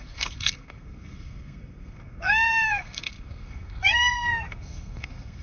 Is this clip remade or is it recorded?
remade